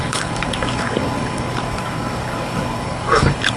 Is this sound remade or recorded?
remade